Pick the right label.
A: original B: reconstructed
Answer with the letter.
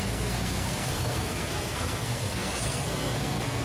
B